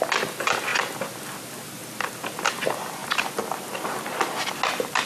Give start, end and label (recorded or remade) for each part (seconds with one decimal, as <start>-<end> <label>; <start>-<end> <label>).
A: 0.0-5.1 recorded

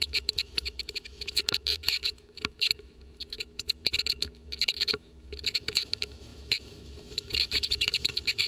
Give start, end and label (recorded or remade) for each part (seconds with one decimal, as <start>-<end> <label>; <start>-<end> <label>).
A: 0.0-8.5 remade